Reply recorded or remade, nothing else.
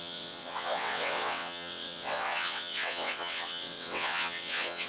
remade